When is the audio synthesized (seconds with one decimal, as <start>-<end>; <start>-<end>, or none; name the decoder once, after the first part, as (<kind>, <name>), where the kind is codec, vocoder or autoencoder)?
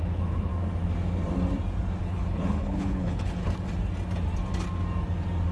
0.0-0.5 (codec, HILCodec); 2.0-3.4